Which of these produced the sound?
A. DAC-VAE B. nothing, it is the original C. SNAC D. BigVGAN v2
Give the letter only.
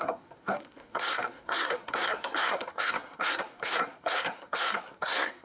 C